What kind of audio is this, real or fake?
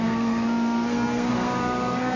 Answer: fake